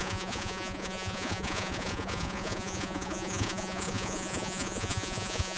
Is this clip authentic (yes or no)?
no